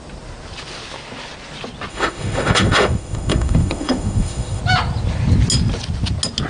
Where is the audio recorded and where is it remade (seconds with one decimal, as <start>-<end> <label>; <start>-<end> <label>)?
0.0-1.9 recorded; 1.9-4.6 remade; 4.6-6.5 recorded